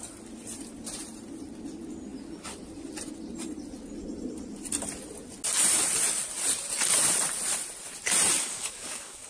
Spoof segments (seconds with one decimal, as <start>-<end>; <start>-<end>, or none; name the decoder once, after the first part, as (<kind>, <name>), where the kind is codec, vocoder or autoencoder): 8.4-9.3 (codec, DAC)